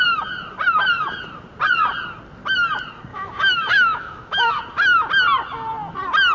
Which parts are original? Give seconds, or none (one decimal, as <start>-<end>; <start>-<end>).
0.0-3.1; 4.6-6.3

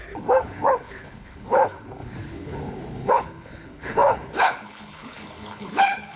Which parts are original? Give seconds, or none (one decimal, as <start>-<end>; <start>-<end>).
none

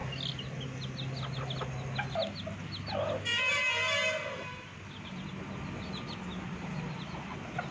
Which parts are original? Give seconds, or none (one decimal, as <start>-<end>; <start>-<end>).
0.0-7.7

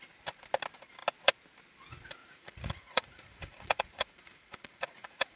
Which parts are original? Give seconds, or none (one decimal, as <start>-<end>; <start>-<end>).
0.0-2.2

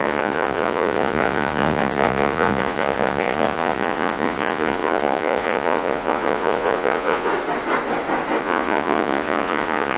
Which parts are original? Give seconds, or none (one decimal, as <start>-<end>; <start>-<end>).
7.3-8.4

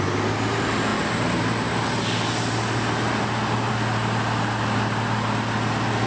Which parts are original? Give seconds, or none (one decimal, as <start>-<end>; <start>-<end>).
0.0-6.1

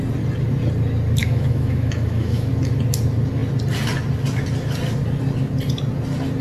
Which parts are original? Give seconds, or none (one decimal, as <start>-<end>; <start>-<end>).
0.0-1.2; 2.5-6.4